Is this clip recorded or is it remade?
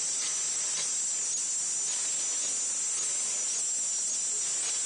recorded